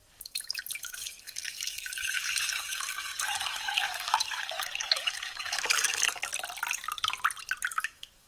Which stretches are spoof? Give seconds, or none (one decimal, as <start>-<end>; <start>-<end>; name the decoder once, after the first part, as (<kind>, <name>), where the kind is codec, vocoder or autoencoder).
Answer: 0.0-6.3 (codec, DAC); 7.7-8.3